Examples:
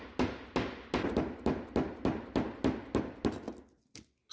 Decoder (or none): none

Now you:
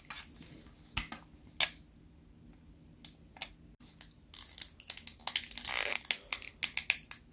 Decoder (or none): none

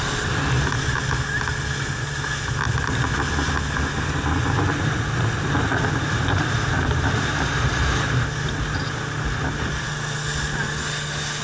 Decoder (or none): none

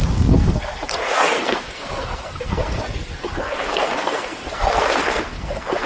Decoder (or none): codec, SNAC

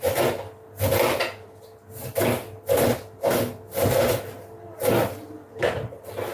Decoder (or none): none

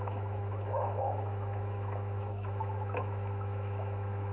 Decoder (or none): autoencoder, DAC-VAE